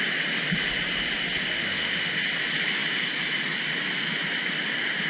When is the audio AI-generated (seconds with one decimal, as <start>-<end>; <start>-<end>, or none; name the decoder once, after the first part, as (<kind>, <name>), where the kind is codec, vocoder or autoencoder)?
1.5-2.2 (autoencoder, DAC-VAE)